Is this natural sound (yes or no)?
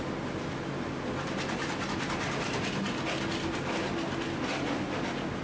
yes